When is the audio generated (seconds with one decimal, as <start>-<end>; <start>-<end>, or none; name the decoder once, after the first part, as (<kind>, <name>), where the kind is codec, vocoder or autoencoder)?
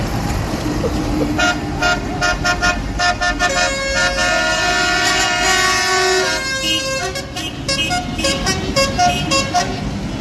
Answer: 0.0-3.1 (vocoder, BigVGAN v2)